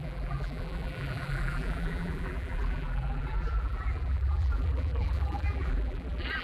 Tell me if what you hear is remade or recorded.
remade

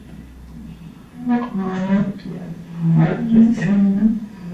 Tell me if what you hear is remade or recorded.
recorded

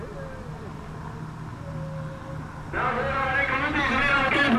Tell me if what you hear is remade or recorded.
recorded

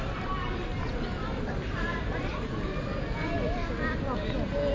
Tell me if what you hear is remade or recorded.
recorded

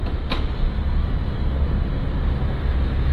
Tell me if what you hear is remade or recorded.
recorded